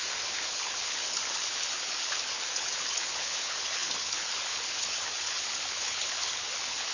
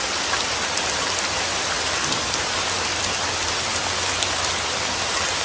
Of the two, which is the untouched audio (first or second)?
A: second